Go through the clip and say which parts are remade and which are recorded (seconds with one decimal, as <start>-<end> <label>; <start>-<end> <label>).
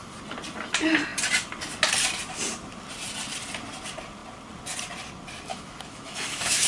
0.0-5.5 recorded; 5.5-6.7 remade